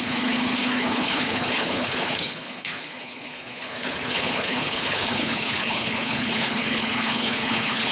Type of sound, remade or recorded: remade